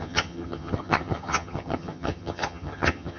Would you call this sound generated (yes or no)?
yes